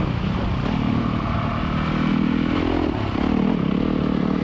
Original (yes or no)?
yes